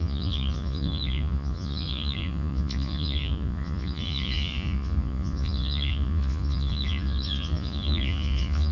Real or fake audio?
fake